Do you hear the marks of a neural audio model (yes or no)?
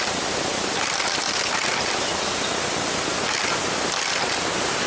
no